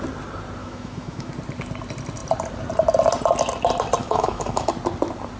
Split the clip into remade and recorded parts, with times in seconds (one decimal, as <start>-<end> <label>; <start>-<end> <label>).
0.0-0.6 recorded; 0.6-1.3 remade; 1.3-4.0 recorded; 4.0-4.7 remade; 4.7-5.4 recorded